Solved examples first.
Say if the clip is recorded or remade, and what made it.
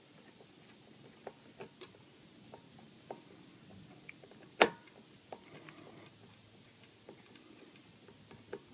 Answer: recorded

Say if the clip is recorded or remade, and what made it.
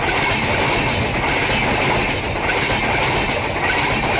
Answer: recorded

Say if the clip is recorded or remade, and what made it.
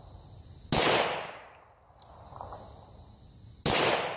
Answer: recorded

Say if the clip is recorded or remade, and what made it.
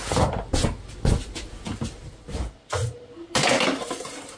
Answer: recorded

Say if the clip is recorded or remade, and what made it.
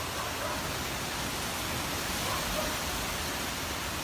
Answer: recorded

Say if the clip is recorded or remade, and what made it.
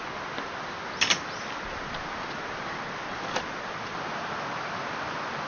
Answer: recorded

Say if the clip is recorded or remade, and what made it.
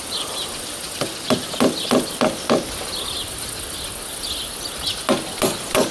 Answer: recorded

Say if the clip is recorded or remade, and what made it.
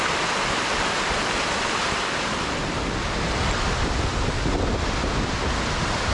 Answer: recorded